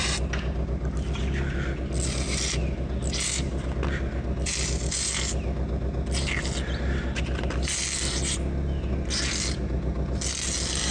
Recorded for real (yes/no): yes